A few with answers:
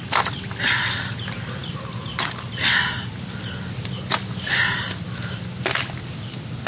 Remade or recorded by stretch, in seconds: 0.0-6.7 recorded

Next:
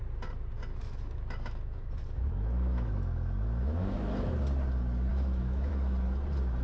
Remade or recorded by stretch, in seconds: 0.0-0.7 recorded; 0.7-4.3 remade; 4.3-5.1 recorded; 5.1-5.7 remade; 5.7-6.6 recorded

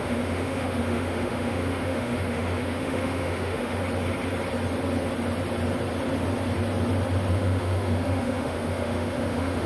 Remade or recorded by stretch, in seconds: 0.0-3.8 remade; 3.8-7.3 recorded; 7.3-9.7 remade

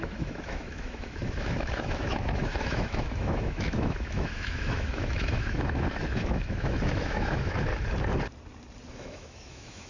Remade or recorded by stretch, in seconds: 0.0-7.7 remade; 7.7-8.9 recorded; 8.9-9.9 remade

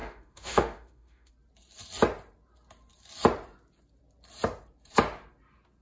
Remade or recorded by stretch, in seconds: 0.0-1.3 remade; 1.3-5.8 recorded